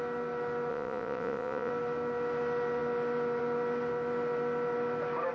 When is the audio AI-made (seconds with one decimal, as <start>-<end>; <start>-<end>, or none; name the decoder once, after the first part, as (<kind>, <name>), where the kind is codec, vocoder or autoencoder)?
0.7-1.7 (vocoder, Vocos)